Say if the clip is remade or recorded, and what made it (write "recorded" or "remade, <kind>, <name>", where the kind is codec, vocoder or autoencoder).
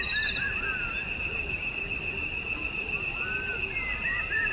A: recorded